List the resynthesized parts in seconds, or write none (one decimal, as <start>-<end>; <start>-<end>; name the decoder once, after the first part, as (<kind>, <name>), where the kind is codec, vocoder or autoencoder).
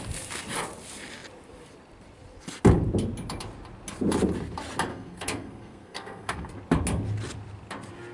4.9-6.5 (codec, SNAC)